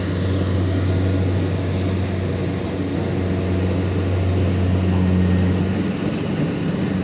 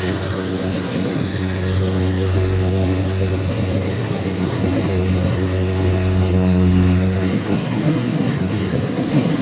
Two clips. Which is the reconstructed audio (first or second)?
second